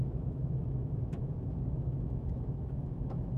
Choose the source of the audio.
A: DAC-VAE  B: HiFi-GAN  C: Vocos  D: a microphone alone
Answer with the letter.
A